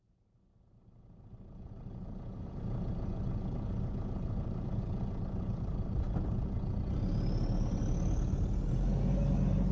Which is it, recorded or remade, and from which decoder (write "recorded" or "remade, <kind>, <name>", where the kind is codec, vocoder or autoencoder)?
recorded